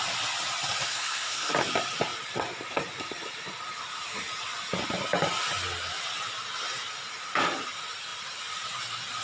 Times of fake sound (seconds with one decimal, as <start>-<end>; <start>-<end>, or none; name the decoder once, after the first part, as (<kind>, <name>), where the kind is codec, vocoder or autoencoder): 0.9-1.5 (codec, SNAC)